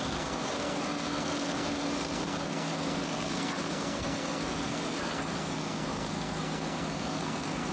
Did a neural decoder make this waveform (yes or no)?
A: yes